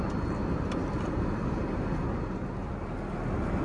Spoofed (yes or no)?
no